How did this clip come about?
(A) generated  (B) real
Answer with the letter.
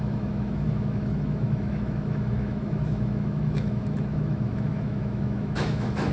A